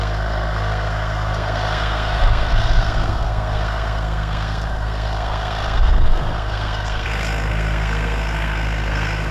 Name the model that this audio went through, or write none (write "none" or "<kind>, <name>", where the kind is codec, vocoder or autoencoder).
codec, SNAC